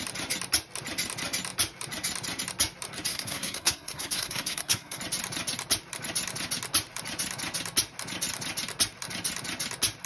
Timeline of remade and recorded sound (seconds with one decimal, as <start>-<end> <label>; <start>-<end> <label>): 0.0-3.1 recorded; 3.1-5.0 remade; 5.0-10.1 recorded